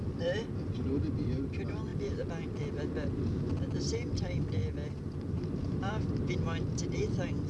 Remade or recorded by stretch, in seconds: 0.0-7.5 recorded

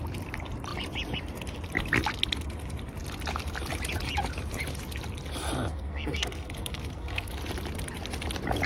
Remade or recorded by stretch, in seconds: 0.0-5.7 recorded; 5.7-7.3 remade; 7.3-8.7 recorded

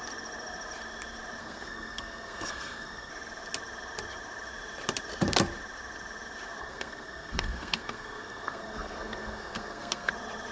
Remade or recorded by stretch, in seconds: 0.0-1.4 recorded; 1.4-3.1 remade; 3.1-6.6 recorded; 6.6-10.1 remade; 10.1-10.5 recorded

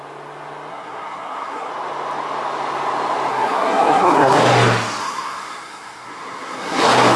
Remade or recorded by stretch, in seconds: 0.0-0.7 recorded; 0.7-1.7 remade; 1.7-3.3 recorded; 3.3-4.4 remade; 4.4-5.0 recorded; 5.0-6.8 remade; 6.8-7.2 recorded

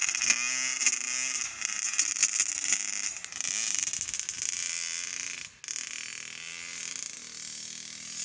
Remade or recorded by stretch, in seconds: 0.0-8.2 recorded

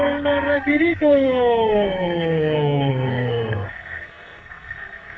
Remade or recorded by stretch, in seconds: 0.0-5.2 remade